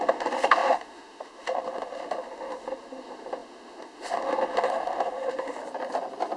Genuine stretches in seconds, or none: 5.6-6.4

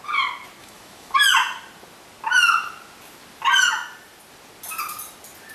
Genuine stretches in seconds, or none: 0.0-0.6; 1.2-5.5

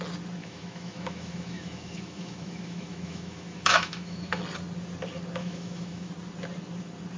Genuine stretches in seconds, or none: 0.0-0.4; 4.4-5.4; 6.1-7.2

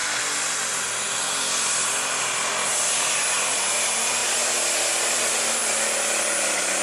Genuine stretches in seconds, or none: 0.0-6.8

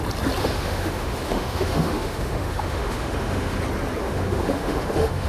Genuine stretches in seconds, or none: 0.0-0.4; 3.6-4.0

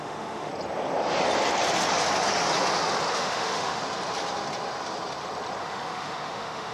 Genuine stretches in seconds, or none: 0.5-3.1; 3.8-5.6

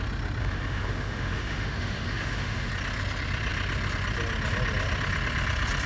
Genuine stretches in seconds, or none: 0.0-0.4; 2.7-5.9